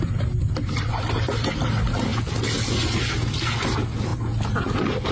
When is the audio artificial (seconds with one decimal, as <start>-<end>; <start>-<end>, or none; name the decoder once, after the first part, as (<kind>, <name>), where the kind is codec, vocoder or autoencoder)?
none